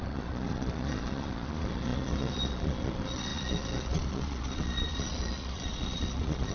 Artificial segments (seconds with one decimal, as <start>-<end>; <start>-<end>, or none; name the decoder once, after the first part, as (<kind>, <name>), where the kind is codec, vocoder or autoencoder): 0.0-6.5 (vocoder, Vocos)